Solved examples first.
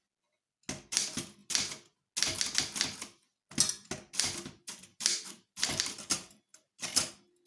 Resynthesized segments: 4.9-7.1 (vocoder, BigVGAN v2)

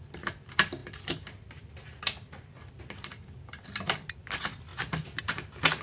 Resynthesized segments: none